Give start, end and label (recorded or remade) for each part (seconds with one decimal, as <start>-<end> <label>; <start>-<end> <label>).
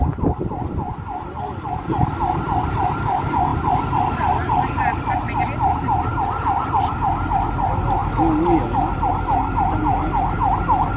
0.0-11.0 recorded